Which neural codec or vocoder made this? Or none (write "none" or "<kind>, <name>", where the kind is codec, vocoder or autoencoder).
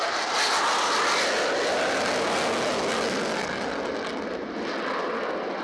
none